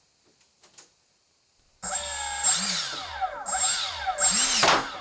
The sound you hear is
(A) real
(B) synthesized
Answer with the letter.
A